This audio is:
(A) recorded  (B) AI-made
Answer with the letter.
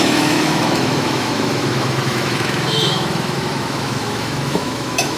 B